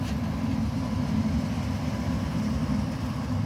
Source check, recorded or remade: recorded